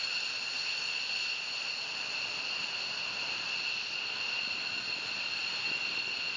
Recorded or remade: recorded